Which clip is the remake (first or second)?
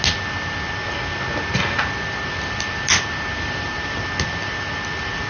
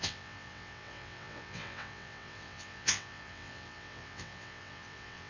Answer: second